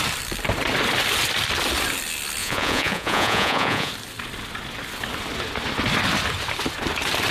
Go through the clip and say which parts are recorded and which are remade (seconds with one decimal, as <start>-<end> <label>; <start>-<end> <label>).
0.0-2.4 recorded; 2.4-3.9 remade; 3.9-7.3 recorded